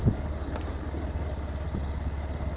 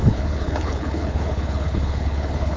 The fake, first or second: second